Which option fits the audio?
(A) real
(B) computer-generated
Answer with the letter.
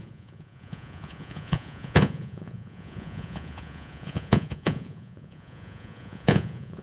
B